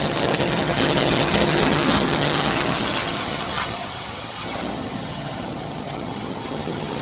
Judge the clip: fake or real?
fake